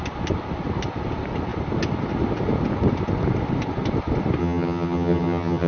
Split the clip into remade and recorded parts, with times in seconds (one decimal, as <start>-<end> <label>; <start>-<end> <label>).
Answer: 0.0-4.4 recorded; 4.4-5.7 remade